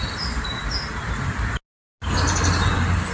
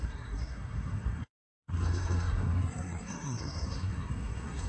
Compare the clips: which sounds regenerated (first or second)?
second